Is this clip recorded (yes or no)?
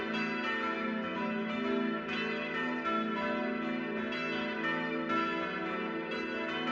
yes